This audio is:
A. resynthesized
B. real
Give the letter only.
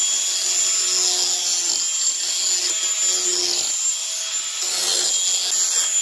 B